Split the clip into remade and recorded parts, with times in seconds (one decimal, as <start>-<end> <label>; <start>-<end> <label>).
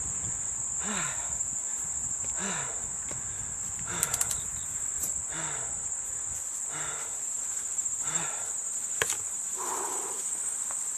0.0-11.0 recorded